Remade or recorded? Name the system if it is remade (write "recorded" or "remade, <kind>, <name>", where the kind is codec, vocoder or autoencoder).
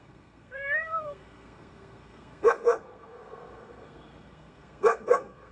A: remade, codec, SNAC